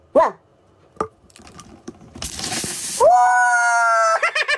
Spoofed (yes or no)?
no